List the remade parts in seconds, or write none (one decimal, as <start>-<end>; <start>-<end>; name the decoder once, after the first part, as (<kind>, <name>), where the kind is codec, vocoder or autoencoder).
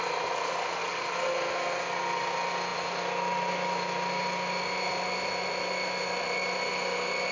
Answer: none